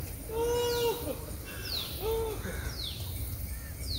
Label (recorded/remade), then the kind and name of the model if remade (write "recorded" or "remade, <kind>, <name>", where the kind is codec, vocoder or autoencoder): recorded